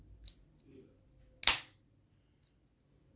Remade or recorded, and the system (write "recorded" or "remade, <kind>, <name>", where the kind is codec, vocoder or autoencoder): recorded